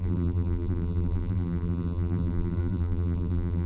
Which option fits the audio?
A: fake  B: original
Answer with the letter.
A